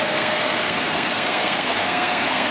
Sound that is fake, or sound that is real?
fake